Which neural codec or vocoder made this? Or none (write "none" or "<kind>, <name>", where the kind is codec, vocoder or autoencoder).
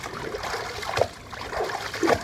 none